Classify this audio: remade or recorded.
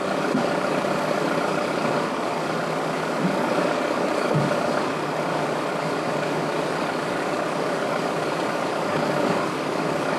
remade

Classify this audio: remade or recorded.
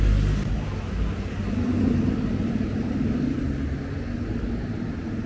recorded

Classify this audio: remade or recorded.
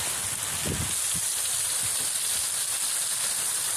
recorded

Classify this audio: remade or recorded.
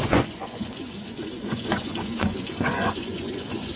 remade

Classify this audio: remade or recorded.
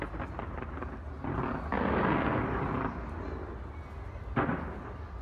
recorded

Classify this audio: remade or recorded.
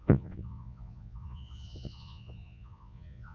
remade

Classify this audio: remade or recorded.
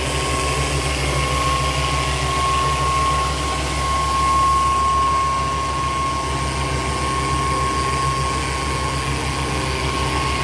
recorded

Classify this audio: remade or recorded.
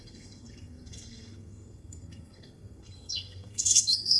remade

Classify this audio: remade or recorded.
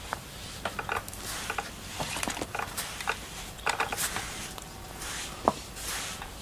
recorded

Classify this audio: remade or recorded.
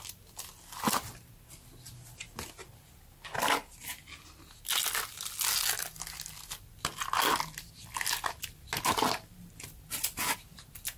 recorded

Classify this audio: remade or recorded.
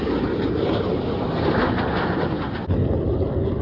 recorded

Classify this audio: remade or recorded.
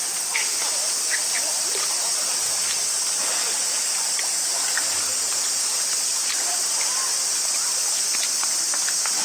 recorded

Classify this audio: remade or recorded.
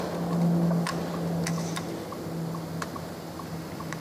recorded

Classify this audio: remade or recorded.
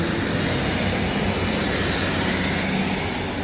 recorded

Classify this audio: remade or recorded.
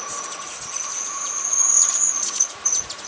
remade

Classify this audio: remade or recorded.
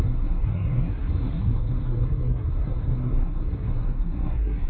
remade